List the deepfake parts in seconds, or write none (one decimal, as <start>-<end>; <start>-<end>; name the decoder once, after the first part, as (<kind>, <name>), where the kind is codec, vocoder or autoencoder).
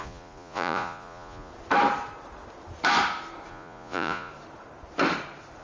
0.0-1.5 (vocoder, Vocos); 3.5-4.3